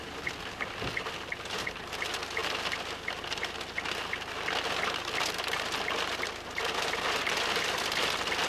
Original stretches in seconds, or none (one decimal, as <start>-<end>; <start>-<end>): 0.0-8.5